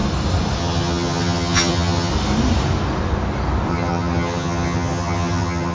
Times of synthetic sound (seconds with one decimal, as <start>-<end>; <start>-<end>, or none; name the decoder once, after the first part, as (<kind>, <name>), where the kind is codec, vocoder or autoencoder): 0.6-2.1 (vocoder, HiFi-GAN); 3.7-5.7